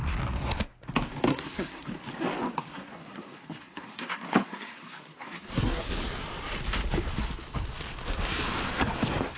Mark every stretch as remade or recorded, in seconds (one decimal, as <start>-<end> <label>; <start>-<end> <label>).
0.0-1.3 recorded; 1.3-1.9 remade; 1.9-2.7 recorded; 2.7-5.9 remade; 5.9-9.4 recorded